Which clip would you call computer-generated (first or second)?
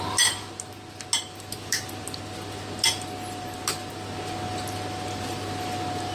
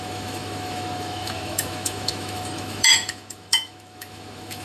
second